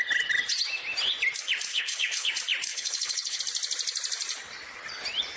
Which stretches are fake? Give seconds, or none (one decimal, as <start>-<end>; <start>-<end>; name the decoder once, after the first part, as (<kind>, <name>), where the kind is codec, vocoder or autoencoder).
1.7-2.3 (codec, HILCodec); 2.7-3.4